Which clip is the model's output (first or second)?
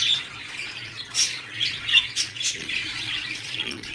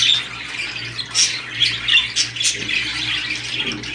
first